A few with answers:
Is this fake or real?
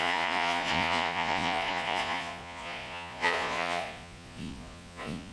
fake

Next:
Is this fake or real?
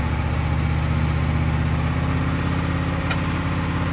real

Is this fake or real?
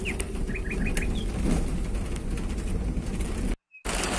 real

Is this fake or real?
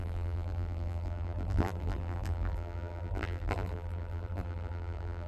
fake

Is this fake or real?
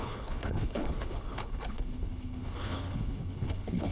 fake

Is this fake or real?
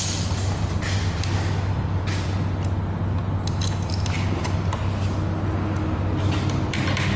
real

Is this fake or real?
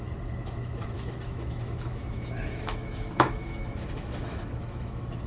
fake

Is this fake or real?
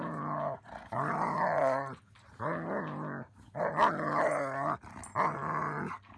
real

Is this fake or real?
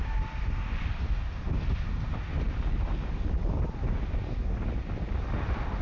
real